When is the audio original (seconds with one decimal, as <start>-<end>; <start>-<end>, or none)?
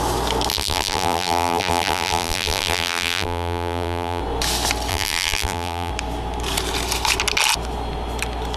0.0-0.5; 4.2-4.9; 5.9-8.6